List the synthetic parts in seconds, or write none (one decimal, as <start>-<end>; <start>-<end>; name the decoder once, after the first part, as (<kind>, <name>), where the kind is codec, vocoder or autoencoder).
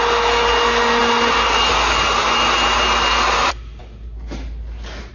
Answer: none